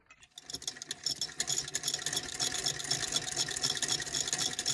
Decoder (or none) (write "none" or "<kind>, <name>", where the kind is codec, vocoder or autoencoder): none